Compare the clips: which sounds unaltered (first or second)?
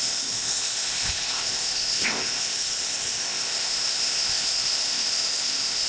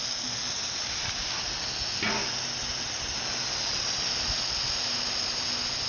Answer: second